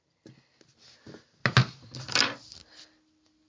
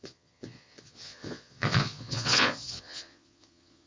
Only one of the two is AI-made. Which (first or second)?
second